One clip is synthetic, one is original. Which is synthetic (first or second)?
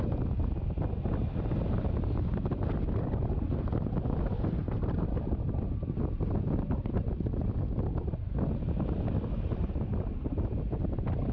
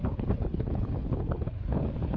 second